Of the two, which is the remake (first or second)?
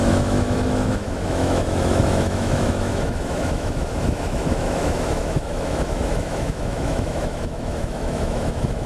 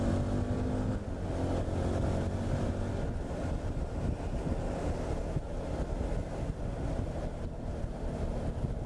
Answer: first